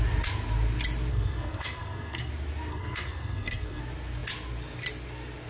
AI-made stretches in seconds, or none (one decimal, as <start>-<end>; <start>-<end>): 1.1-2.3; 2.7-3.8